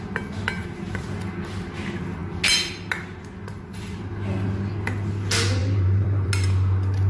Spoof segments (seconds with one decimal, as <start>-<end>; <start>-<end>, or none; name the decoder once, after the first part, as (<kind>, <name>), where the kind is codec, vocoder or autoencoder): 0.6-1.2 (vocoder, BigVGAN v2); 5.6-6.3